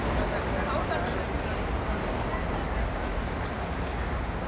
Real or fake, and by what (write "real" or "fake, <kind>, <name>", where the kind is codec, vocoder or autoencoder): real